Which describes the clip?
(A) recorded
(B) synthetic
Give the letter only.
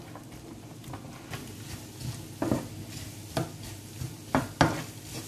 A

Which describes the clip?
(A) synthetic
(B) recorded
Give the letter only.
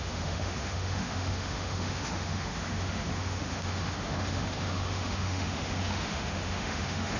A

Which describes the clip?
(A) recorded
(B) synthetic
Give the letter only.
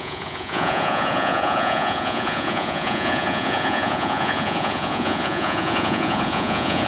B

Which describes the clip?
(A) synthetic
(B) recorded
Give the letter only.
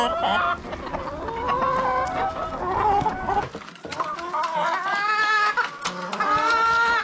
B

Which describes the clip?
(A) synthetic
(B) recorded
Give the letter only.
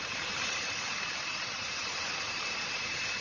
A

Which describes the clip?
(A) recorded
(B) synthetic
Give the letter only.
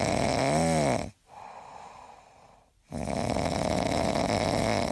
A